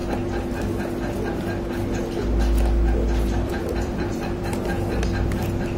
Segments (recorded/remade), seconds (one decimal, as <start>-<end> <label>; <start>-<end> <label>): 0.0-3.5 recorded; 3.5-5.8 remade